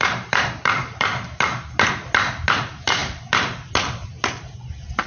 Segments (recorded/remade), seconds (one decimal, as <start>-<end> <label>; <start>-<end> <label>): 0.0-1.1 remade; 1.1-2.6 recorded; 2.6-3.0 remade; 3.0-5.1 recorded